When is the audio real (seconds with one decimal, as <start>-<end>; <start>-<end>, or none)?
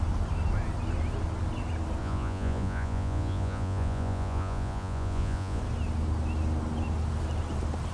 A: 0.0-2.0; 5.6-7.9